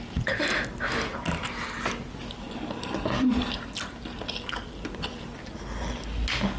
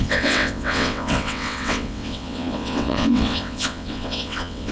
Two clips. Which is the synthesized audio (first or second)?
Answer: second